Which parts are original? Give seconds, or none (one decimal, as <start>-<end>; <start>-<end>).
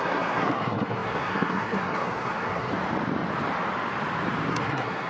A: 2.7-4.5